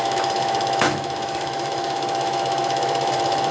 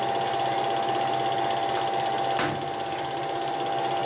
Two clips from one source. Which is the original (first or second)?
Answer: second